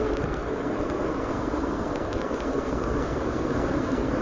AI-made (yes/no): yes